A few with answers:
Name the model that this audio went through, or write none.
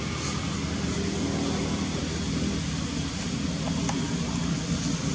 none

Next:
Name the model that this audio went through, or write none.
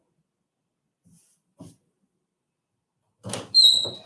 none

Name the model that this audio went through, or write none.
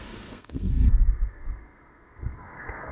codec, SNAC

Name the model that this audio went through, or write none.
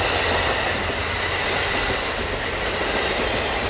none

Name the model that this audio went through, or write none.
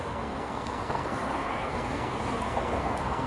codec, SNAC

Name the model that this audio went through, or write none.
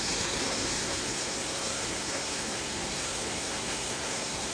codec, SNAC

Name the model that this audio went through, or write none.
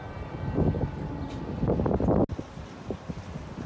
none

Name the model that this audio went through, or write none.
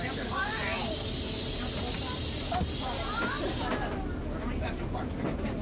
none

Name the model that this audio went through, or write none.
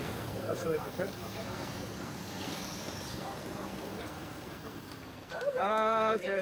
codec, SNAC